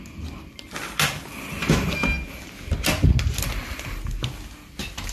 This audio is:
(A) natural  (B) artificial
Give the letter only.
A